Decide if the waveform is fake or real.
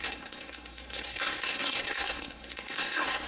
fake